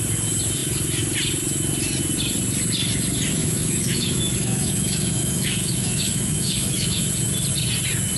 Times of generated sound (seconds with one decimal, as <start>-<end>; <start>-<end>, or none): 3.4-7.0